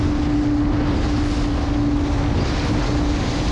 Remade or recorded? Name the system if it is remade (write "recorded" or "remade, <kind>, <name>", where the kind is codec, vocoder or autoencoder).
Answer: recorded